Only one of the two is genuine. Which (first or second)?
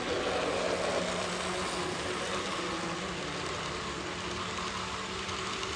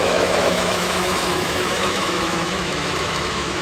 first